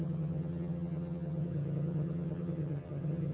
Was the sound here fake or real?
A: fake